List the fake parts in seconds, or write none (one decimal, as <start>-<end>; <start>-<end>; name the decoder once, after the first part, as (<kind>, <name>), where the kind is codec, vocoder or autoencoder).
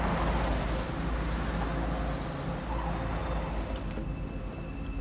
none